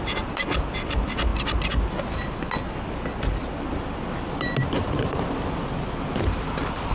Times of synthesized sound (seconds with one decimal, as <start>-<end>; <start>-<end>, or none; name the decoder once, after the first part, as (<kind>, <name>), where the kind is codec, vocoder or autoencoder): 0.0-1.3 (vocoder, BigVGAN v2); 2.7-6.9